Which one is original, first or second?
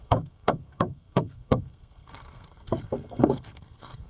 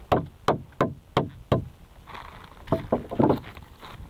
second